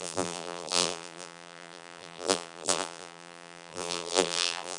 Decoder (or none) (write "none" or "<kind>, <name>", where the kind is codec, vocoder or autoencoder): vocoder, BigVGAN v2